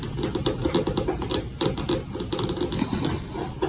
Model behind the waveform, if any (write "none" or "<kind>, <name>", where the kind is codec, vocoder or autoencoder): none